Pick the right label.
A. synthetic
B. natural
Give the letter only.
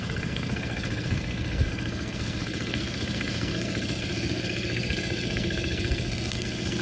A